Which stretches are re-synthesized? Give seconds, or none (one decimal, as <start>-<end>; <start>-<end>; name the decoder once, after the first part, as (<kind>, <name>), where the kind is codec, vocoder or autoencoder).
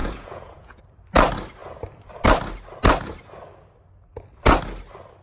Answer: 0.0-0.8 (vocoder, Vocos)